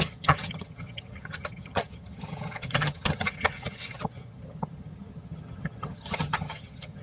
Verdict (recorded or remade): remade